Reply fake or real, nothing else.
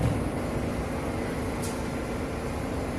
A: real